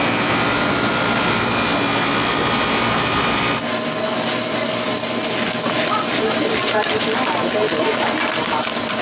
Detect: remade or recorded recorded